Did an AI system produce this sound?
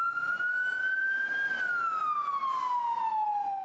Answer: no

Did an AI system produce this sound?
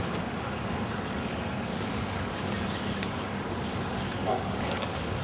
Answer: yes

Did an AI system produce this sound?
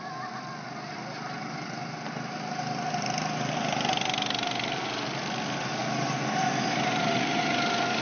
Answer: no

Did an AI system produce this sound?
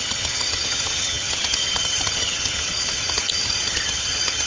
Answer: yes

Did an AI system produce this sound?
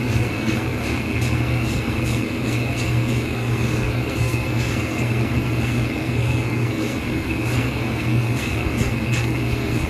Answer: yes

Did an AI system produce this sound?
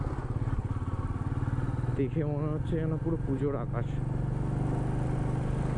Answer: no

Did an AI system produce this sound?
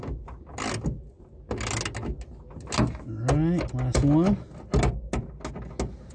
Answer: no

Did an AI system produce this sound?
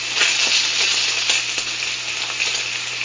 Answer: no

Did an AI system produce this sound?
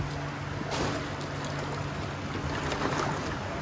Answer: no